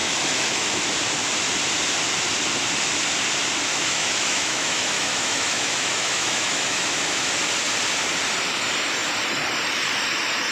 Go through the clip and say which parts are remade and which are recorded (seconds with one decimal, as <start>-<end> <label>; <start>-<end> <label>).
0.0-0.7 remade; 0.7-3.7 recorded; 3.7-7.3 remade; 7.3-10.5 recorded